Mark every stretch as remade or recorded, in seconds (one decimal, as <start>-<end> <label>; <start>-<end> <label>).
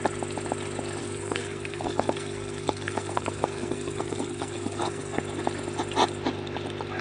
0.0-1.0 recorded; 1.0-5.2 remade; 5.2-7.0 recorded